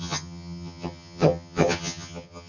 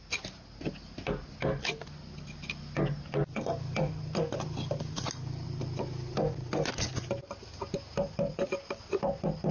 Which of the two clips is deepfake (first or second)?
first